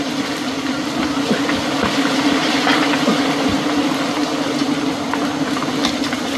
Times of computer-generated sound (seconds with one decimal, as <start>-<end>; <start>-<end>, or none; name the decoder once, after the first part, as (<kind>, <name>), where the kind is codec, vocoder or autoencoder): none